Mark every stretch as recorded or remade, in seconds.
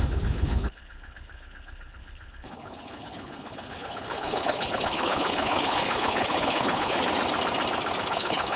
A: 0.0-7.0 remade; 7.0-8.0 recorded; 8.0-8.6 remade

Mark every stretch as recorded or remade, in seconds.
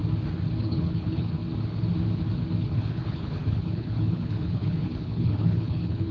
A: 0.0-0.6 recorded; 0.6-1.4 remade; 1.4-2.6 recorded; 2.6-6.1 remade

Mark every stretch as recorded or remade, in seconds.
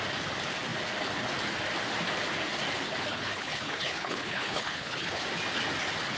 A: 0.0-3.1 recorded; 3.1-5.2 remade; 5.2-6.2 recorded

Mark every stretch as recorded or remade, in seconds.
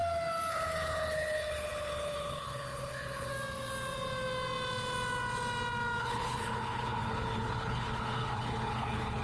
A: 0.0-0.5 recorded; 0.5-3.3 remade; 3.3-6.0 recorded; 6.0-9.2 remade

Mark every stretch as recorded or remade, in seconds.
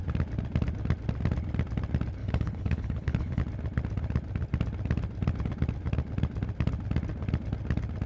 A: 0.0-2.2 recorded; 2.2-3.4 remade; 3.4-8.1 recorded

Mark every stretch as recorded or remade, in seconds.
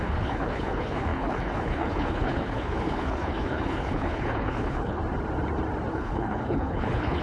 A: 0.0-5.0 remade; 5.0-5.9 recorded; 5.9-7.2 remade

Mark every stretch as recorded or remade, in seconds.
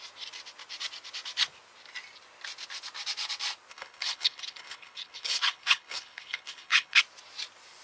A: 0.0-3.7 recorded; 3.7-7.0 remade; 7.0-7.8 recorded